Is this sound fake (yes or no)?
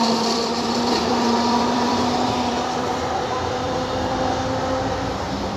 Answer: yes